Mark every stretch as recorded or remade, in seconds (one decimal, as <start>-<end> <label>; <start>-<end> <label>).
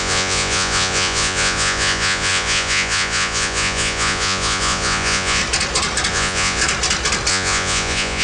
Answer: 0.0-5.4 remade; 5.4-6.1 recorded; 6.1-6.6 remade; 6.6-7.3 recorded; 7.3-8.2 remade